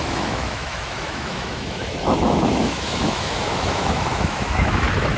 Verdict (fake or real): fake